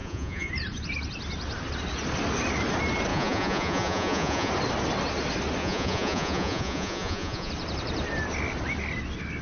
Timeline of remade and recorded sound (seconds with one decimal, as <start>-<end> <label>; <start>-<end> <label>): 0.0-0.5 remade; 0.5-3.1 recorded; 3.1-4.5 remade; 4.5-5.6 recorded; 5.6-7.5 remade; 7.5-9.4 recorded